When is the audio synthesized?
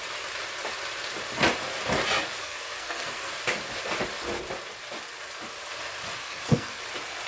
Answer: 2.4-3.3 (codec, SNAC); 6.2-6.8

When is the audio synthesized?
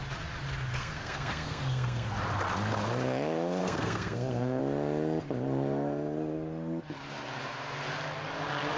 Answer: 0.7-2.1 (codec, SNAC); 3.6-4.6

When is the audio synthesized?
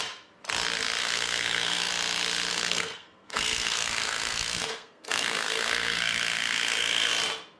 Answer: 1.0-1.9 (codec, SNAC); 2.5-7.1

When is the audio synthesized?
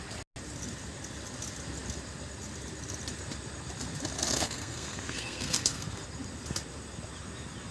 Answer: 4.3-6.0 (codec, SNAC)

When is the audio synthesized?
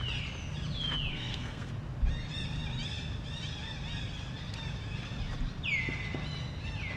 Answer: 1.1-1.7 (codec, SNAC)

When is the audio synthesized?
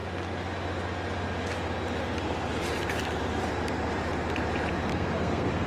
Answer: 4.9-5.7 (codec, SNAC)